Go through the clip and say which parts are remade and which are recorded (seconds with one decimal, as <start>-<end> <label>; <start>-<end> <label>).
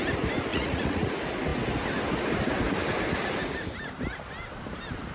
0.0-0.5 recorded; 0.5-1.1 remade; 1.1-5.1 recorded